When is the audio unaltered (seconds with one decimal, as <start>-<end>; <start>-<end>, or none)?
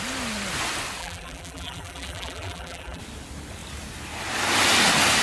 0.0-1.0; 3.0-5.2